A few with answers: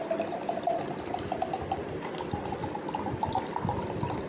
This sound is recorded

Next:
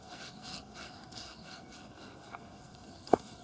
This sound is remade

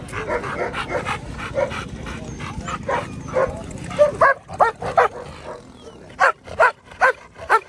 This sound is recorded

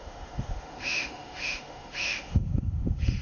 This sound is remade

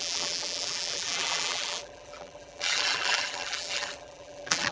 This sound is remade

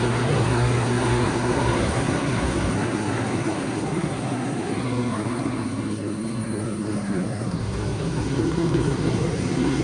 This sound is remade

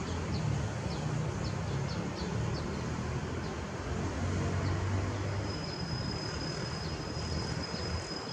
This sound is recorded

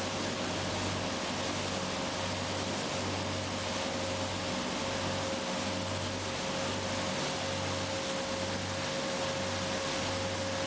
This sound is recorded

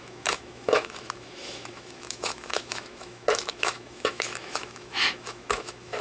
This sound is remade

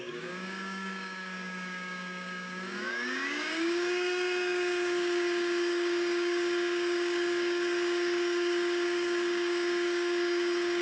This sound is remade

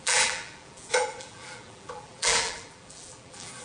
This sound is remade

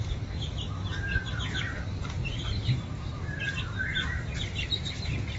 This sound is recorded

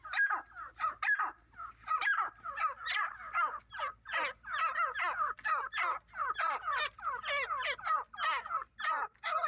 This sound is recorded